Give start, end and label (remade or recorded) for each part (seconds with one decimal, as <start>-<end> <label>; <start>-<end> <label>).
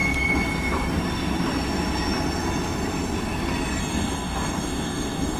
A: 0.0-3.8 recorded; 3.8-5.4 remade